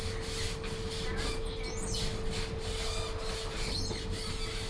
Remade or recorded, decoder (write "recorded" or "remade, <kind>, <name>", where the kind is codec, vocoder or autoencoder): recorded